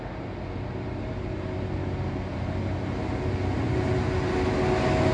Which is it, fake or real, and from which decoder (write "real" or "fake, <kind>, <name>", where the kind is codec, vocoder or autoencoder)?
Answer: real